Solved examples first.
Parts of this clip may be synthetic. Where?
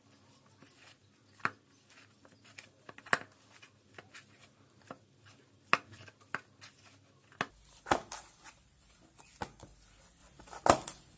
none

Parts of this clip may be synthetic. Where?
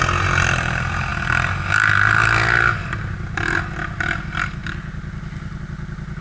none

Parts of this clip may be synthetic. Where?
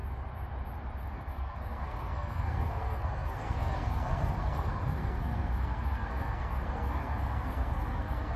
1.1-8.4 (codec, SNAC)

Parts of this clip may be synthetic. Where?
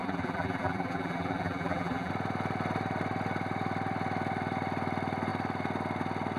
0.0-2.1 (vocoder, BigVGAN v2)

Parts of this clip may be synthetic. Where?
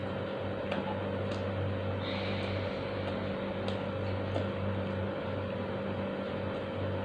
none